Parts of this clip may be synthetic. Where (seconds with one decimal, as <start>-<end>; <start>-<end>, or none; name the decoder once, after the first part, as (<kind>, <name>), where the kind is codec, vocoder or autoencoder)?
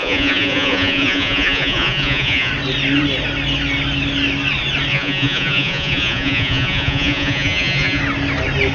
0.0-2.5 (vocoder, Vocos); 4.9-8.0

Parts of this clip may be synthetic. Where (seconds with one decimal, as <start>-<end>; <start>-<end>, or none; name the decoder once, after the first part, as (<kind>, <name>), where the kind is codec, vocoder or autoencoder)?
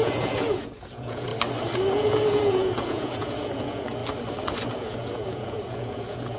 0.0-1.3 (vocoder, Vocos); 1.9-4.0; 4.7-6.4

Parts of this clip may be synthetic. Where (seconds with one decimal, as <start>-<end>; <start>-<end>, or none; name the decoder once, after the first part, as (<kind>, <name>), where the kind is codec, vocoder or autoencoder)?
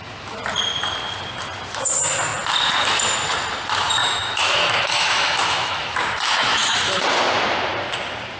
4.0-7.0 (autoencoder, DAC-VAE)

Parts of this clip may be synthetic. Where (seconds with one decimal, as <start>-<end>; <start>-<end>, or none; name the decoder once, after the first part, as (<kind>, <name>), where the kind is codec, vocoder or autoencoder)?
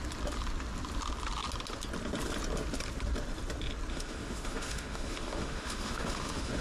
3.9-6.6 (autoencoder, DAC-VAE)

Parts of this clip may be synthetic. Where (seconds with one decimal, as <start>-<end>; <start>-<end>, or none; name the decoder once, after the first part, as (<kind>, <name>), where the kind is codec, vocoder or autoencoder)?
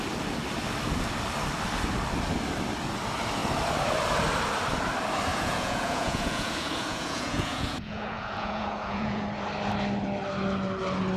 5.3-9.2 (vocoder, Vocos)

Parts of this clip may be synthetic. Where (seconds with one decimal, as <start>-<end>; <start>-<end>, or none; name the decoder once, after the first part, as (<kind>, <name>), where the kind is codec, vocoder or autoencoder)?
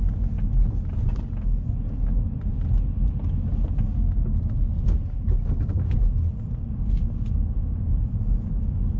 none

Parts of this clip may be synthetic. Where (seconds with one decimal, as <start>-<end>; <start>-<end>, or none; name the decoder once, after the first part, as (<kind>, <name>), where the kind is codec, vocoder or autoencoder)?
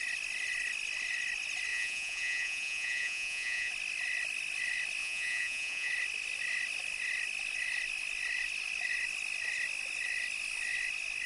1.7-3.7 (vocoder, Vocos); 5.0-5.9